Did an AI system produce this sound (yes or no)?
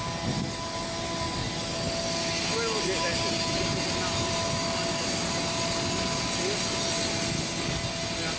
no